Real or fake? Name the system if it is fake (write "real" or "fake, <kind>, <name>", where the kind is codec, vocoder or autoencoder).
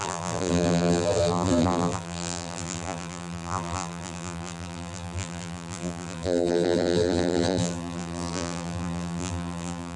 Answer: fake, vocoder, BigVGAN v2